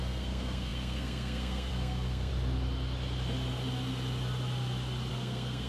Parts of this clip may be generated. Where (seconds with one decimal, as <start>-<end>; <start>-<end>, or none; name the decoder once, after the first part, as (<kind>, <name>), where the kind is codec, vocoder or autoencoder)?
0.0-2.3 (codec, SNAC); 5.1-5.7